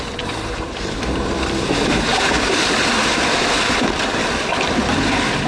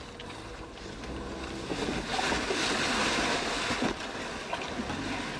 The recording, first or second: second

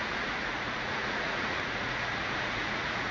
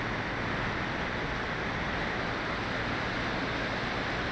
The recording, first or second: second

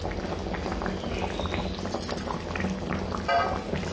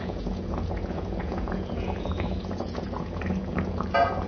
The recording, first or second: first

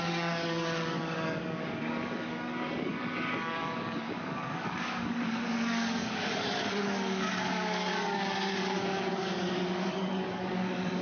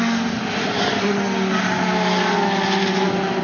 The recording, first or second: second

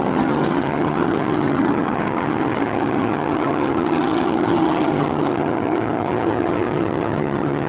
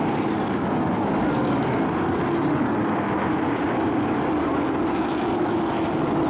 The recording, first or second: second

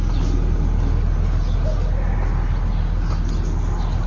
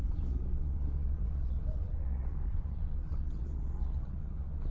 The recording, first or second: first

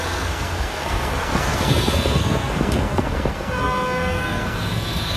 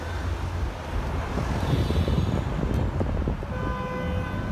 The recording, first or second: second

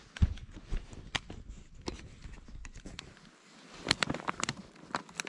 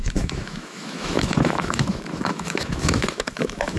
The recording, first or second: first